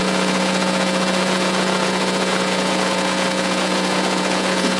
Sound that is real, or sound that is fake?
fake